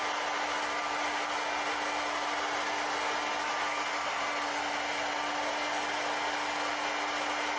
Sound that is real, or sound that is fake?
real